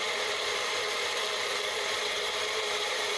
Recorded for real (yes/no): no